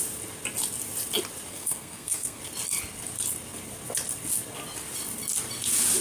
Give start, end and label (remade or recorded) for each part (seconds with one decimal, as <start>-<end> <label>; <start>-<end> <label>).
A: 0.0-1.5 recorded; 1.5-2.4 remade; 2.4-6.0 recorded